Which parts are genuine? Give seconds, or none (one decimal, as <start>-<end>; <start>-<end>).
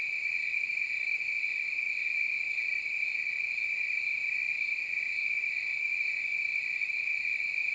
0.0-7.7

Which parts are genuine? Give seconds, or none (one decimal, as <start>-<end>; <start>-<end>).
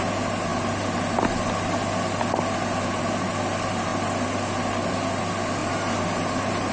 0.0-6.7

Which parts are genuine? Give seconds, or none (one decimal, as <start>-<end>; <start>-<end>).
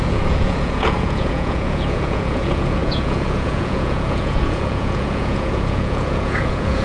none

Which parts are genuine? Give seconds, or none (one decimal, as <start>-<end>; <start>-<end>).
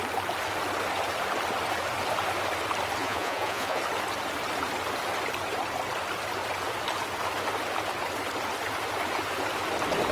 0.0-3.0; 3.8-10.1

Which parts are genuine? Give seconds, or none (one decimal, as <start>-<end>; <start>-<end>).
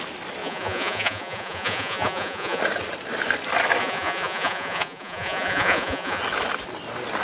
0.0-0.4; 2.6-3.8; 6.2-7.2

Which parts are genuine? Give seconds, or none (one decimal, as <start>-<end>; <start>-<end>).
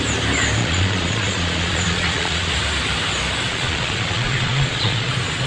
0.0-0.6; 2.5-3.5; 5.1-5.5